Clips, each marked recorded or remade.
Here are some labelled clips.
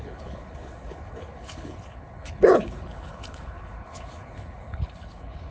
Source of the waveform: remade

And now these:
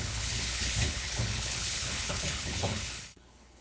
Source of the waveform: remade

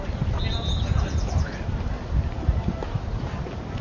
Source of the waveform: recorded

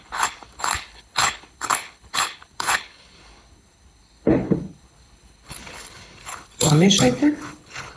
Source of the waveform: remade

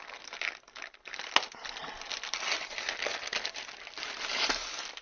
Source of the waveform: recorded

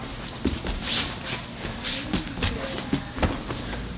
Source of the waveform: recorded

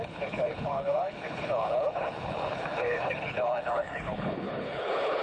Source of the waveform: remade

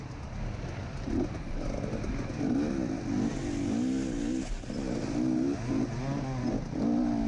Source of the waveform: recorded